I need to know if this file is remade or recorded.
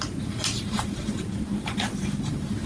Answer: remade